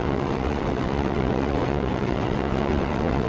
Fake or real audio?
fake